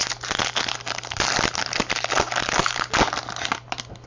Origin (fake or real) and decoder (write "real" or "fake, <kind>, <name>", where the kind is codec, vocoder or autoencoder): real